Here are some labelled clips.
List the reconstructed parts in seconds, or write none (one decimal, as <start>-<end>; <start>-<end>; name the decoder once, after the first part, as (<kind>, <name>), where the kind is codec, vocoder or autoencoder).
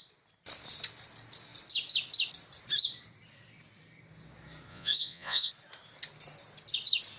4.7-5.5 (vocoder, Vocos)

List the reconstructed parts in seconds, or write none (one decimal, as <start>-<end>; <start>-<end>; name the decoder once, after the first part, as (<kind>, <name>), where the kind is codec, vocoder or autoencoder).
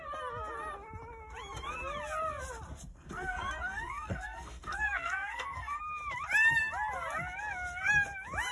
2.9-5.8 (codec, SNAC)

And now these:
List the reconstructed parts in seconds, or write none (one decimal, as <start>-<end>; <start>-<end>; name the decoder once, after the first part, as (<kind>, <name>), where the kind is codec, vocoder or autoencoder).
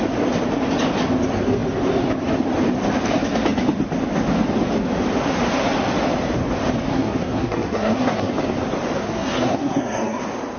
6.9-8.3 (codec, SNAC); 9.0-10.2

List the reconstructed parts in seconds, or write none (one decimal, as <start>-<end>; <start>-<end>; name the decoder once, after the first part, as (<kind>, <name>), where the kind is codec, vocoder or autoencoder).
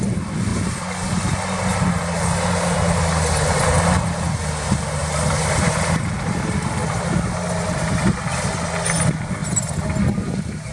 5.0-8.0 (vocoder, BigVGAN v2)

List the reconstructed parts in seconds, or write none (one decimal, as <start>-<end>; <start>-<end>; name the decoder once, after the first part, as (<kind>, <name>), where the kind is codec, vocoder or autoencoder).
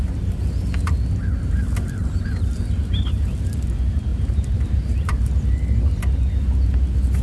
4.1-5.3 (vocoder, BigVGAN v2)